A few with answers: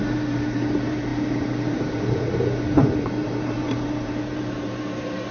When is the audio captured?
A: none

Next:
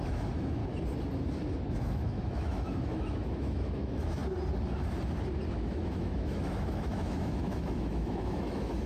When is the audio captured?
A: 0.6-1.8; 4.2-5.5

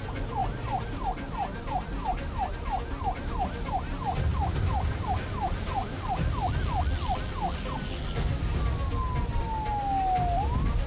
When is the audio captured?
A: 0.0-0.4; 2.5-4.3; 6.3-10.9